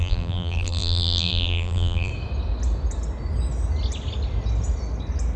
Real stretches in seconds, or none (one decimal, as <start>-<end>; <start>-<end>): 2.1-5.4